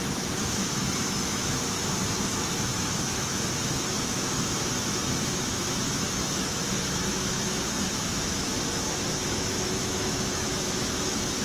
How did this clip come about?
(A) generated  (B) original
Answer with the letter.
A